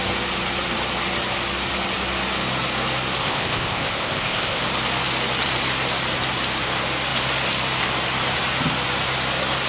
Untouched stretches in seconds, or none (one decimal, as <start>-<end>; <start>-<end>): 0.0-3.2; 4.6-9.7